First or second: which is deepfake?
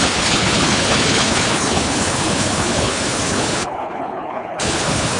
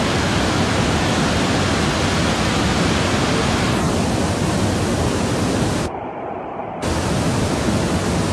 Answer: first